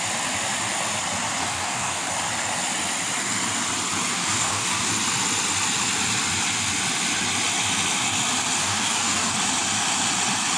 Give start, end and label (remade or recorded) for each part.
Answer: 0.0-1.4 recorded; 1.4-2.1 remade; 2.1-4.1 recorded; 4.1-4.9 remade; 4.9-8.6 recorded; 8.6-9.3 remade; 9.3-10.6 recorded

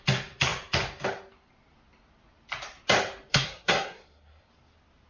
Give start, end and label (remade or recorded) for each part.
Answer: 0.0-3.3 recorded; 3.3-4.5 remade; 4.5-5.1 recorded

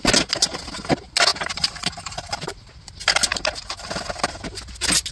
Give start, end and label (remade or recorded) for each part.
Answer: 0.0-1.3 recorded; 1.3-2.7 remade; 2.7-5.1 recorded

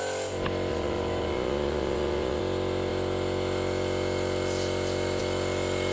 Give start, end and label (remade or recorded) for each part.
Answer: 0.0-0.7 recorded; 0.7-2.4 remade; 2.4-5.9 recorded

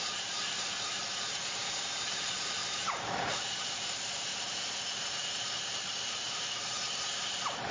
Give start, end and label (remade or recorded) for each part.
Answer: 0.0-4.3 remade; 4.3-6.2 recorded; 6.2-7.7 remade

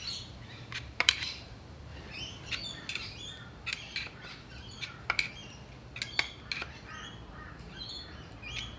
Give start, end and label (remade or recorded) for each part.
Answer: 0.0-1.9 remade; 1.9-2.9 recorded; 2.9-5.4 remade; 5.4-7.3 recorded; 7.3-8.8 remade